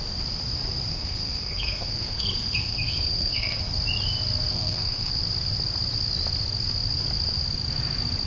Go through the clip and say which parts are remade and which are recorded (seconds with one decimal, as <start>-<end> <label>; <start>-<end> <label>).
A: 0.0-0.9 recorded; 0.9-3.6 remade; 3.6-4.5 recorded; 4.5-5.1 remade; 5.1-8.3 recorded